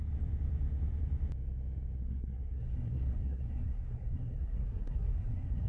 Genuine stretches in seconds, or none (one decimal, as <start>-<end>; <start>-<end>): 0.0-2.0